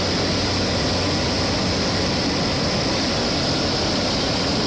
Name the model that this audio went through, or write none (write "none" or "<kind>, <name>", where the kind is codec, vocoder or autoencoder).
none